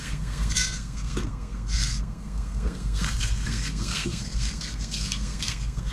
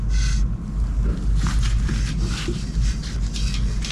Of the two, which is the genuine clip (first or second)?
second